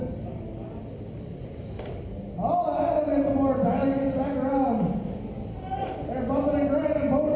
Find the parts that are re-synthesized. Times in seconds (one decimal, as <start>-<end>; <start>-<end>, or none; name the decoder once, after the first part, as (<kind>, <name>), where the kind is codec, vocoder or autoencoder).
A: none